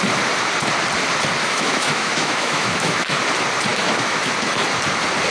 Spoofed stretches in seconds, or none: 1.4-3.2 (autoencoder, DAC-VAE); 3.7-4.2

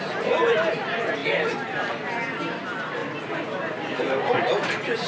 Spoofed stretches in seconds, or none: none

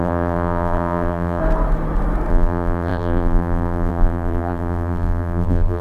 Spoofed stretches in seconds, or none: 0.0-1.4 (vocoder, BigVGAN v2); 2.3-5.8

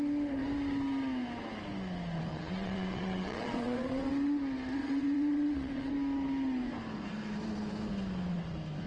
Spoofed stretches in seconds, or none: 2.3-4.1 (vocoder, WaveNeXt); 4.8-5.9